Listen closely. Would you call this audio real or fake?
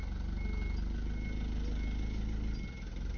real